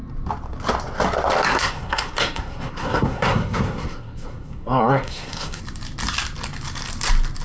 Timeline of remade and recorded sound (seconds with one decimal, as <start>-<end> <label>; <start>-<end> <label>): 0.0-1.5 recorded; 1.5-5.6 remade; 5.6-7.4 recorded